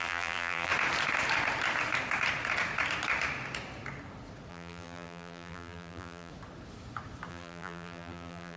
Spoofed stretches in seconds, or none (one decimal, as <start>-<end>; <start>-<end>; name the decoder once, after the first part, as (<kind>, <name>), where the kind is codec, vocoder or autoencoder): 0.0-0.7 (vocoder, BigVGAN v2); 4.5-6.3; 7.3-8.6